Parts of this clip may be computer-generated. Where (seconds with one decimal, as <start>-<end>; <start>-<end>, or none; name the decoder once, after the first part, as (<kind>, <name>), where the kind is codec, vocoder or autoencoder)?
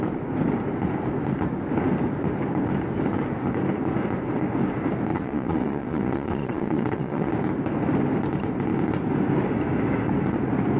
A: 5.1-7.3 (vocoder, Vocos)